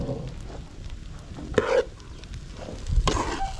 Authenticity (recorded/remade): recorded